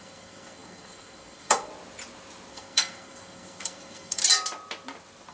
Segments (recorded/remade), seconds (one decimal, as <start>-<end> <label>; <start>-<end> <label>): 0.0-1.7 remade; 1.7-2.5 recorded; 2.5-4.2 remade; 4.2-5.3 recorded